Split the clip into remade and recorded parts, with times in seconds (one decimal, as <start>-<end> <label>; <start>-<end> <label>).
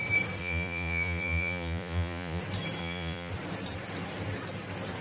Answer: 0.0-0.4 recorded; 0.4-2.4 remade; 2.4-2.8 recorded; 2.8-3.3 remade; 3.3-5.0 recorded